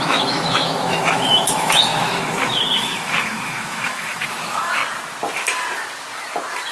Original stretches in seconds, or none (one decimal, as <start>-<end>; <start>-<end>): 4.8-6.7